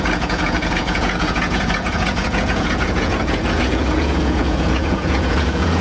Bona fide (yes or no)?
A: no